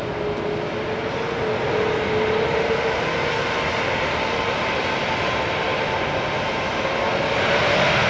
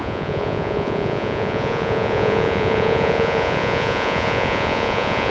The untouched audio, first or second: first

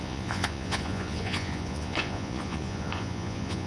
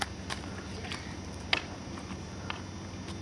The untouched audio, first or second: second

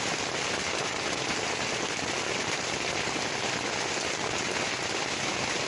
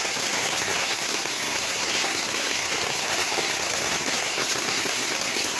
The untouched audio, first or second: first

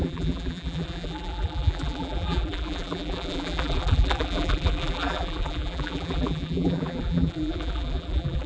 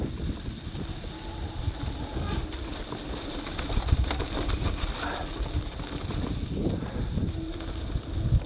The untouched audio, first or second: second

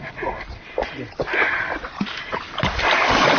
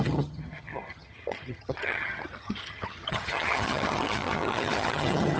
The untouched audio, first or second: first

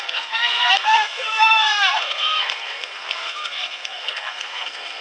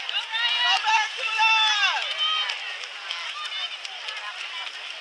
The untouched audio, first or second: second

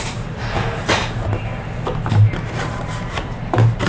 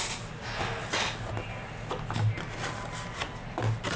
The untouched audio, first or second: second